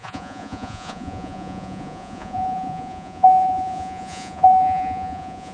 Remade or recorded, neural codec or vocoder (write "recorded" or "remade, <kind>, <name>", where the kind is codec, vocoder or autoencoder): remade, vocoder, Vocos